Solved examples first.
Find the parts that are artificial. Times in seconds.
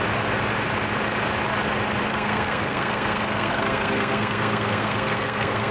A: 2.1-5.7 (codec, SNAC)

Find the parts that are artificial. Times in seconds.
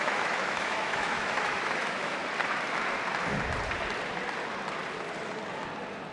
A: 0.0-2.2 (autoencoder, DAC-VAE)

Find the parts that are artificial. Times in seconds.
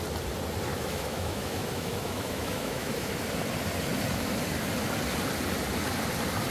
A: 0.7-3.1 (autoencoder, DAC-VAE)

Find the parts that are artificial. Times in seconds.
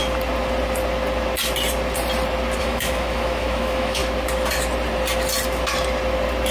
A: 2.6-4.0 (autoencoder, DAC-VAE)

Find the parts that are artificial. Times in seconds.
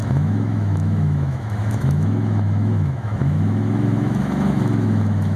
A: 0.0-5.4 (autoencoder, DAC-VAE)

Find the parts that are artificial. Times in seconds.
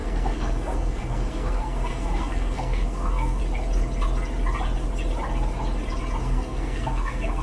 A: 0.0-3.4 (codec, SNAC); 6.2-7.4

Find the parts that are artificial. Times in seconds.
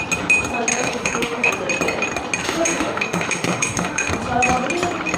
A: 0.7-1.5 (autoencoder, DAC-VAE); 2.4-4.1